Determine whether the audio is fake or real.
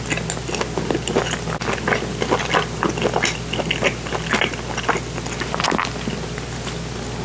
real